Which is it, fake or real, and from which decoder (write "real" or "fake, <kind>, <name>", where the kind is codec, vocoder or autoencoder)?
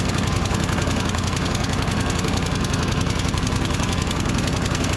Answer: fake, codec, SNAC